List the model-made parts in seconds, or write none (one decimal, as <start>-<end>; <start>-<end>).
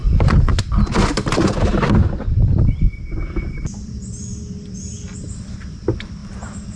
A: 0.0-4.1; 6.2-6.8